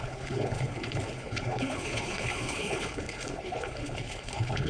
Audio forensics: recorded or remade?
remade